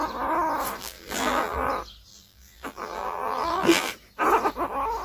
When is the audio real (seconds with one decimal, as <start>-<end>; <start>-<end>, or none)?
0.0-0.8; 1.7-2.1; 3.9-5.0